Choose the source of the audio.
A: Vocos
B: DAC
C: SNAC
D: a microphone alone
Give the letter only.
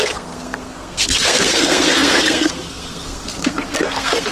C